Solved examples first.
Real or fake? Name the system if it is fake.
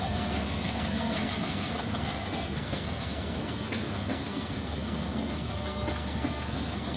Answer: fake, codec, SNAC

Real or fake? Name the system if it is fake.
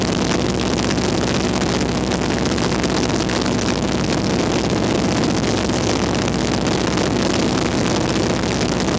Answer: real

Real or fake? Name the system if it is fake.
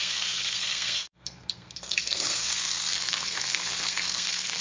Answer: fake, codec, SNAC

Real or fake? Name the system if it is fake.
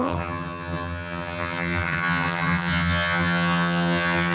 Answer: fake, vocoder, HiFi-GAN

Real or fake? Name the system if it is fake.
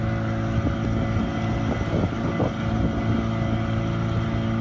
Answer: real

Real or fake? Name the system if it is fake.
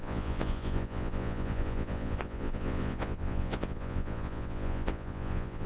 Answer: fake, vocoder, Vocos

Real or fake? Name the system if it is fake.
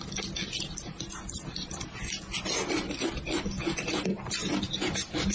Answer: real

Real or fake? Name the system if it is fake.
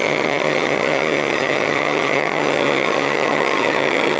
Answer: fake, vocoder, HiFi-GAN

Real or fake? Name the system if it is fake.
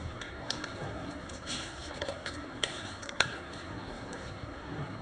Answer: fake, codec, SNAC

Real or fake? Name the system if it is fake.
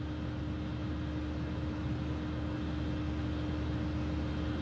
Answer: real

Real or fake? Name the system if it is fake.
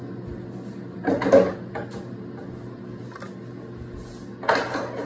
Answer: real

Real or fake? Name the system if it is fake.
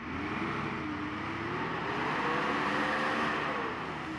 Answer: real